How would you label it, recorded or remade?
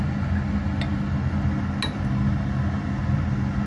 recorded